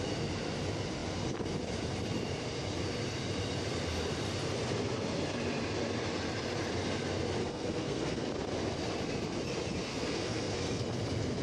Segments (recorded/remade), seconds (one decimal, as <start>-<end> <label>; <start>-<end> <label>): 0.0-7.4 recorded; 7.4-8.3 remade; 8.3-9.9 recorded; 9.9-10.8 remade; 10.8-11.4 recorded